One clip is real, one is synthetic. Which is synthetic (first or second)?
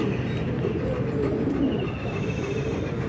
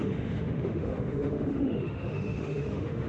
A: second